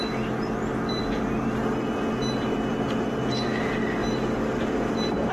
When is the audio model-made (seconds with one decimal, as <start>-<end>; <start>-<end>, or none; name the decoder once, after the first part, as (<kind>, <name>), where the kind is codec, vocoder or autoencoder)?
0.7-1.9 (vocoder, BigVGAN v2); 2.7-3.2; 4.0-4.6